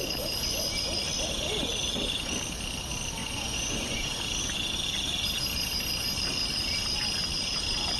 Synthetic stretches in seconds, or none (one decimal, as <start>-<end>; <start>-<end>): 3.2-4.2